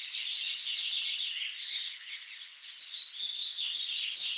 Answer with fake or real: real